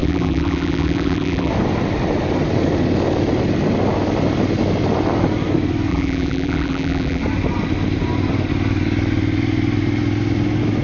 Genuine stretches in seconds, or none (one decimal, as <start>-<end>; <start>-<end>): 1.5-5.9; 7.2-10.8